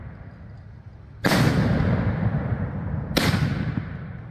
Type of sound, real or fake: real